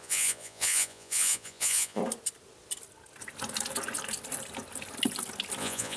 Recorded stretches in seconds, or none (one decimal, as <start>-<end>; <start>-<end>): 2.0-5.6